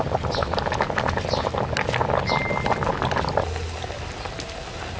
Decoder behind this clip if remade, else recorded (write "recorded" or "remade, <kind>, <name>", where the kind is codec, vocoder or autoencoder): recorded